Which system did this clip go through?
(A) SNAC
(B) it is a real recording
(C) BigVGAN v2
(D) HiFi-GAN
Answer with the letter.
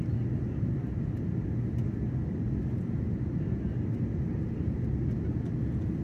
B